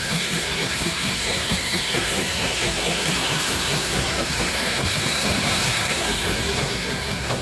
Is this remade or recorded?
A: remade